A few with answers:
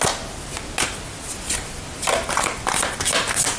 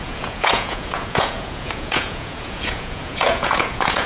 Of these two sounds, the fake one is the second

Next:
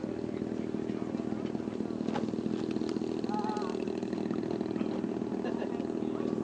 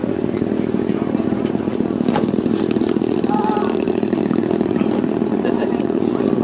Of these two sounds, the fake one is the second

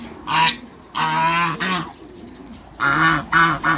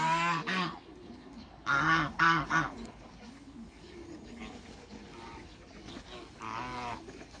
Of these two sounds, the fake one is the second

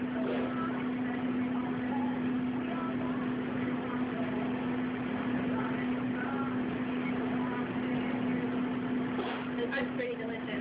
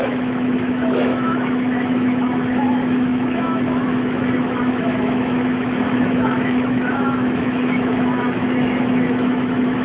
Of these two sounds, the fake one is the second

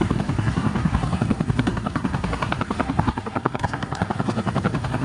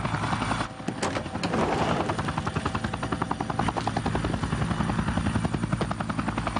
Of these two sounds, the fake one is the first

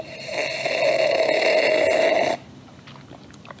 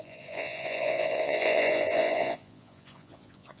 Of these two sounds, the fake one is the second